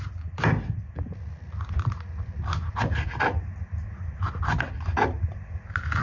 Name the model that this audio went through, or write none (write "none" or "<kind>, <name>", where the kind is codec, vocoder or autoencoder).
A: none